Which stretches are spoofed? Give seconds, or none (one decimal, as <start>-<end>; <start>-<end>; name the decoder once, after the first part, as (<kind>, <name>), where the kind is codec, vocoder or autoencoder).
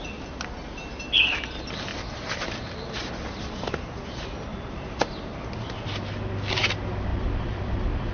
4.5-5.2 (vocoder, BigVGAN v2); 7.1-8.1